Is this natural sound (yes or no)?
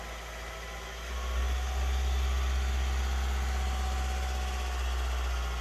yes